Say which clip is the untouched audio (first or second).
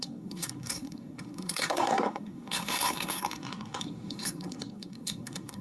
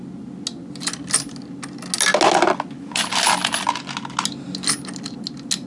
second